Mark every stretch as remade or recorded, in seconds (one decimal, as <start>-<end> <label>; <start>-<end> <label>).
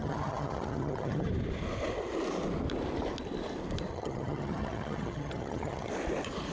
0.0-1.3 remade; 1.3-3.9 recorded; 3.9-5.9 remade; 5.9-6.5 recorded